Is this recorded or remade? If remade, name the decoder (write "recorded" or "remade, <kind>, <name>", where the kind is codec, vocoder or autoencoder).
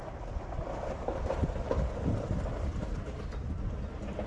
remade, vocoder, BigVGAN v2